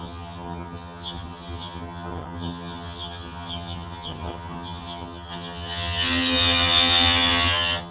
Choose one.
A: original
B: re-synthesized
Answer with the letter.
B